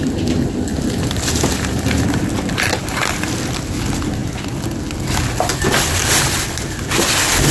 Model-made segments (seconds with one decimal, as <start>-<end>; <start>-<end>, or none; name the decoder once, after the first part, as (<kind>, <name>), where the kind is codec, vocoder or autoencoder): 0.7-2.3 (vocoder, BigVGAN v2)